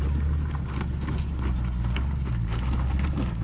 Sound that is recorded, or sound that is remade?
recorded